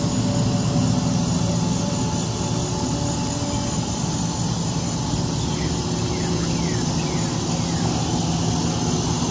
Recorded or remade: recorded